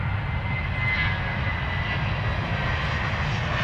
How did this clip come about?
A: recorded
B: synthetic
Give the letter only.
A